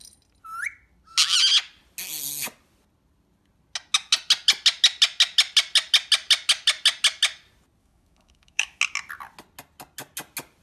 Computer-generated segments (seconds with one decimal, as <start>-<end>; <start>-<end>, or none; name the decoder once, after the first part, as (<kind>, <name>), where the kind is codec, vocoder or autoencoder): 7.8-8.8 (autoencoder, DAC-VAE)